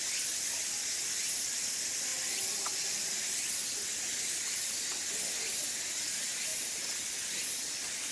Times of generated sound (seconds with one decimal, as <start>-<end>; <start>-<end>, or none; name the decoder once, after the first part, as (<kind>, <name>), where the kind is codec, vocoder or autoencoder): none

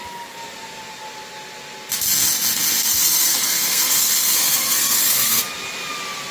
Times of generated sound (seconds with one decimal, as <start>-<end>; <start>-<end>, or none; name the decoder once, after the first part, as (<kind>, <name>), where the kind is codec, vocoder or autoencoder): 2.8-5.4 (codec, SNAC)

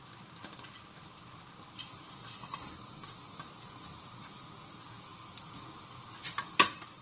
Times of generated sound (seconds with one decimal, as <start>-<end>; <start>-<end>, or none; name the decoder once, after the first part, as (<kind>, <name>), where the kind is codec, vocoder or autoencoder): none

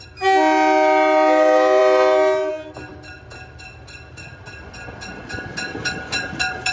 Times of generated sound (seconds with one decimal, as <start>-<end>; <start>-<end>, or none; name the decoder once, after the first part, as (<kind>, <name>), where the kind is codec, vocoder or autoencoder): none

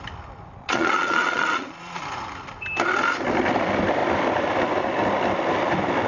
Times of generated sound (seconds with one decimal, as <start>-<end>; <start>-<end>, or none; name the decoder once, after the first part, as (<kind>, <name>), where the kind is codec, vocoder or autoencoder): 0.6-2.0 (vocoder, Vocos)

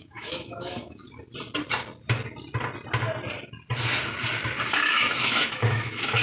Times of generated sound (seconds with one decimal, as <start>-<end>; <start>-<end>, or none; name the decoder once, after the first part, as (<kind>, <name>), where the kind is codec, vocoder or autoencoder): 0.0-1.0 (autoencoder, DAC-VAE); 4.7-6.2

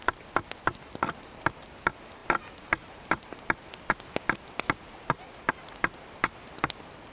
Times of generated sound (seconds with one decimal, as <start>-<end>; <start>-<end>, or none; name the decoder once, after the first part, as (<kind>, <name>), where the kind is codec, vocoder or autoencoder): none